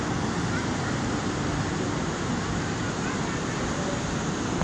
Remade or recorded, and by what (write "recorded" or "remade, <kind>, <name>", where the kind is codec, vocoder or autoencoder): recorded